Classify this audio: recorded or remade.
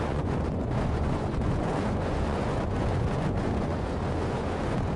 remade